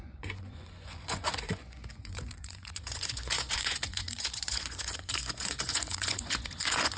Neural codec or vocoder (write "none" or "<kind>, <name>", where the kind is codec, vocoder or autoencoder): vocoder, Vocos